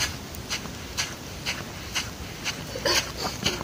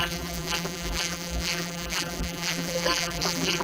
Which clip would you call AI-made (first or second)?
second